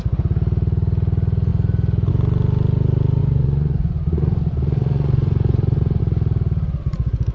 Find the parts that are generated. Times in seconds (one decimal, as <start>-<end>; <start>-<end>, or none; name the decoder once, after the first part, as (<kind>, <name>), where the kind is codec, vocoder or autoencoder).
3.2-6.0 (vocoder, Vocos)